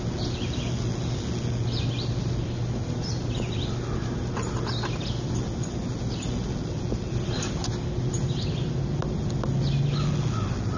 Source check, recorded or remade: recorded